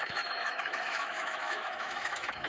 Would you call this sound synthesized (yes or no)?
yes